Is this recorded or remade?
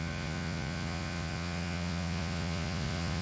remade